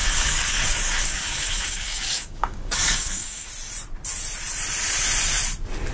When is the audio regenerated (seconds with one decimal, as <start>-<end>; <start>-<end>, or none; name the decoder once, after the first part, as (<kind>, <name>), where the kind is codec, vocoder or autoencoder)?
0.0-3.5 (codec, DAC)